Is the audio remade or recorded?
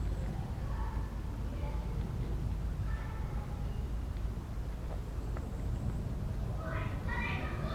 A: recorded